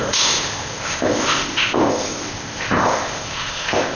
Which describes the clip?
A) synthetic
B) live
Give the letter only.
A